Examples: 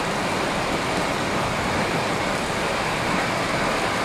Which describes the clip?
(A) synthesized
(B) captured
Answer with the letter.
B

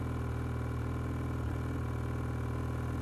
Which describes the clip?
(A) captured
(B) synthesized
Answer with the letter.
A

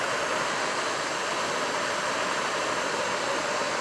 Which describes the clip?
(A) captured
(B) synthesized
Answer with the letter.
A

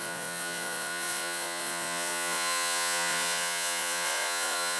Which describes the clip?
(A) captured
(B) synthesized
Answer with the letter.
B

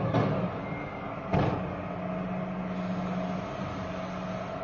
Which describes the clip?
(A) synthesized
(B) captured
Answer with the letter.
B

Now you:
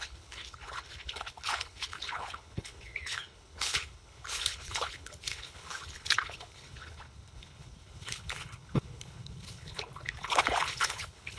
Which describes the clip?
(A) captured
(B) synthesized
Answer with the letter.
B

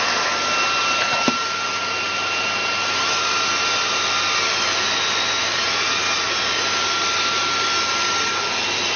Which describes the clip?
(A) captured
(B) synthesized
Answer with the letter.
A